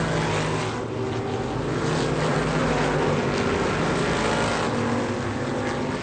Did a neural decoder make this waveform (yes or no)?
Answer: no